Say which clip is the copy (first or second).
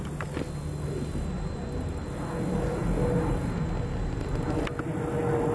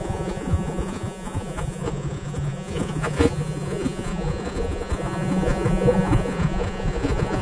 second